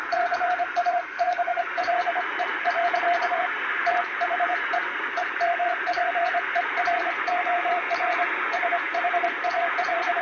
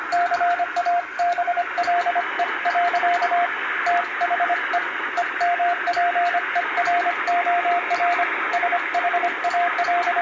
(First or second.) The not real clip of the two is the first